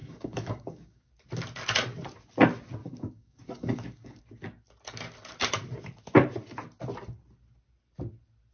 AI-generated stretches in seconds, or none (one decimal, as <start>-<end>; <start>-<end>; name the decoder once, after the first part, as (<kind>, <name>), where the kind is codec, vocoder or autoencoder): 0.0-1.1 (codec, DAC); 2.8-4.2